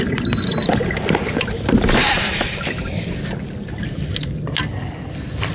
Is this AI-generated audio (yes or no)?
no